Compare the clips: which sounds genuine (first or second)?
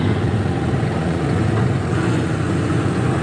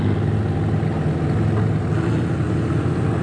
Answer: second